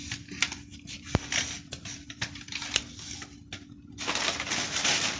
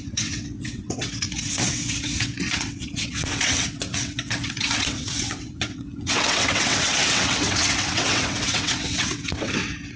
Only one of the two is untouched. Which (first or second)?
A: first